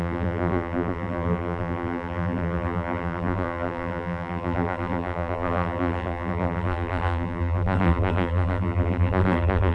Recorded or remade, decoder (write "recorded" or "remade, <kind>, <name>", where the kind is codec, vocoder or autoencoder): remade, vocoder, BigVGAN v2